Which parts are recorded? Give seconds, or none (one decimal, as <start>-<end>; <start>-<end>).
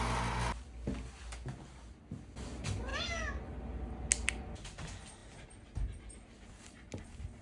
0.0-7.4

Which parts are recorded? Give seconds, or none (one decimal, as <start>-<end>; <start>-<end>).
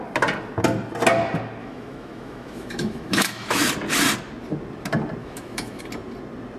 0.0-1.6; 3.6-5.2; 5.8-6.6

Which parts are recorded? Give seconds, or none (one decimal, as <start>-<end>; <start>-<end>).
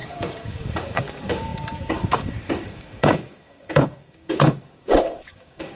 none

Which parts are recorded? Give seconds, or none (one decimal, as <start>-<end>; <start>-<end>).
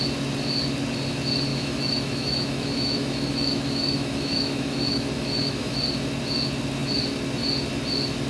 0.0-1.5; 5.8-8.3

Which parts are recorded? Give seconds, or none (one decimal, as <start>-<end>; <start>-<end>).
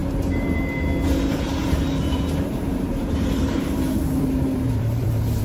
0.9-2.0